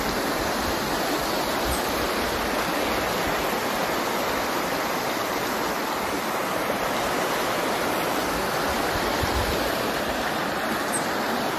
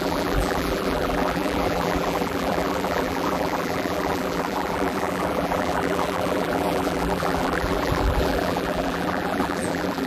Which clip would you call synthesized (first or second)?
second